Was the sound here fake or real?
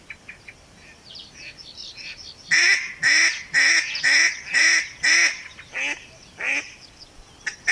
real